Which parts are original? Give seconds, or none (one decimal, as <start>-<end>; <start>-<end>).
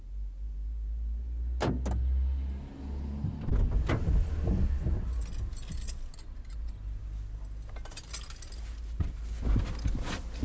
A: 0.0-10.4